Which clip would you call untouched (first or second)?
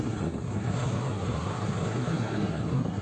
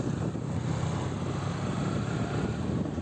second